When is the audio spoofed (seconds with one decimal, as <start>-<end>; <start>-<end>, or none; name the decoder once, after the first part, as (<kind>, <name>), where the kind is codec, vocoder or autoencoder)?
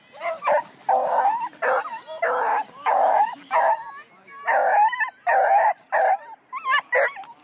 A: 2.5-3.5 (codec, DAC)